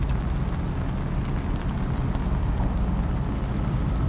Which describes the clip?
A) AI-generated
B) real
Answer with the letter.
B